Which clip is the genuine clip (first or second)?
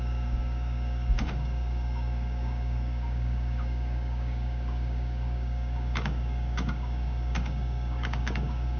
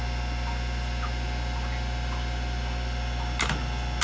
second